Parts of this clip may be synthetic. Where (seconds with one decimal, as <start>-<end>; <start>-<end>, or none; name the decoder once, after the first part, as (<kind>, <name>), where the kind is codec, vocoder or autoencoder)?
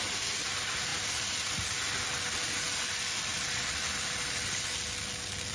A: none